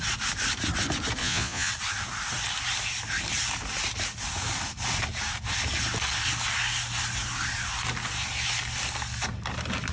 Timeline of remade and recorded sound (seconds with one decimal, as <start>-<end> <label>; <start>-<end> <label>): 0.0-1.2 recorded; 1.2-1.7 remade; 1.7-9.9 recorded